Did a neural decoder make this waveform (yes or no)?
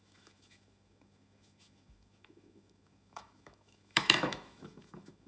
yes